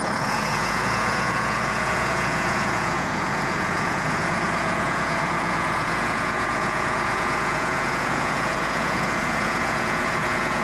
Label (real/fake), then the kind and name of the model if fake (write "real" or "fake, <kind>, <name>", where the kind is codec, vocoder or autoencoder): fake, vocoder, Vocos